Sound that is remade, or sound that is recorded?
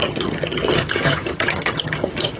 remade